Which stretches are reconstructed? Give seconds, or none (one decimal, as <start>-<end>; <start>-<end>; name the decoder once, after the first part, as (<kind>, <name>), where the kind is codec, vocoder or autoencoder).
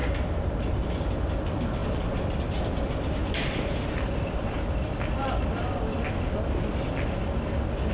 none